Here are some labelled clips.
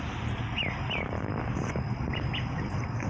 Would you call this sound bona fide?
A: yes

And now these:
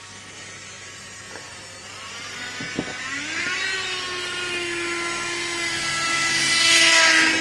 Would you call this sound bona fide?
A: yes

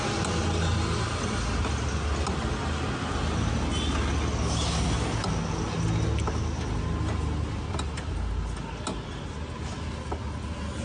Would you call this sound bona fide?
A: yes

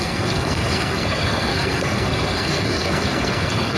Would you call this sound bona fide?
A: no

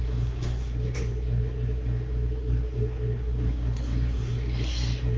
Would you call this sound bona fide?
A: no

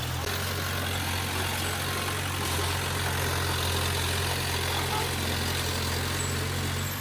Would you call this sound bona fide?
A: yes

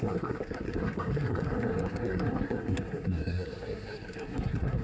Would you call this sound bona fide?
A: no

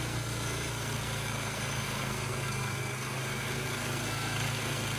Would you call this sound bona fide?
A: no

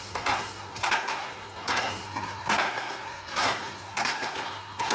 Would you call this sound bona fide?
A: no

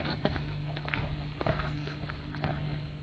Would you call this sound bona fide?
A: no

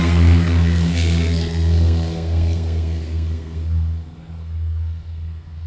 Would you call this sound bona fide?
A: no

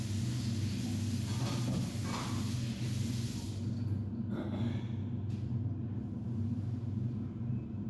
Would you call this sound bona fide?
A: yes